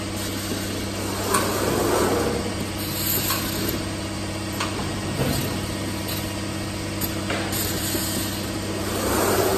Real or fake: real